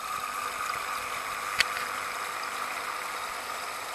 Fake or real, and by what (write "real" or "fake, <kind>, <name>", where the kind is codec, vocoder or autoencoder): real